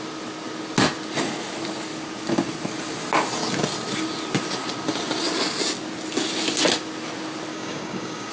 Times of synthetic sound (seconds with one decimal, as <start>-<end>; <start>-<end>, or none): 7.5-8.3